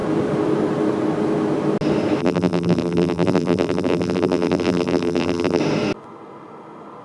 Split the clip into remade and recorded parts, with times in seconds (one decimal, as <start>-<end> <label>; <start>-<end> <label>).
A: 0.0-2.2 recorded; 2.2-5.6 remade; 5.6-7.0 recorded